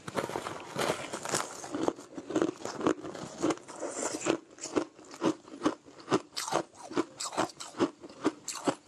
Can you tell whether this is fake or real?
real